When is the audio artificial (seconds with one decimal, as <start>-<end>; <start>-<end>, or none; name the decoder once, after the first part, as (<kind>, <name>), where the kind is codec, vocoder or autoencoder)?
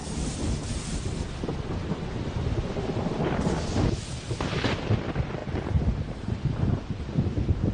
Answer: 5.4-7.0 (vocoder, BigVGAN v2)